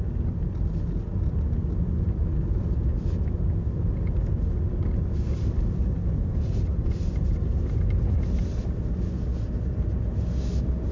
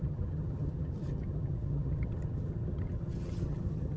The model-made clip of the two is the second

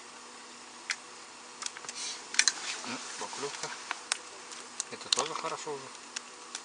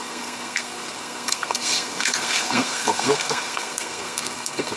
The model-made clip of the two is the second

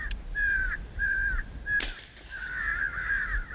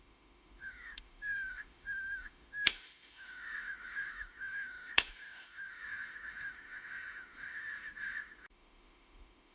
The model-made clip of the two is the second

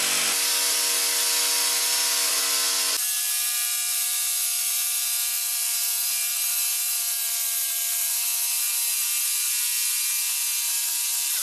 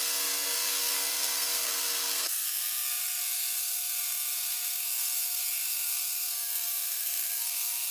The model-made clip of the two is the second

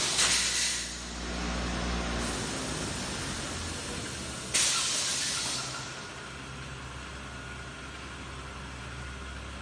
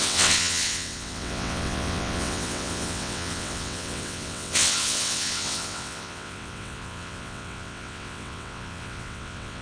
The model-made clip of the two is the second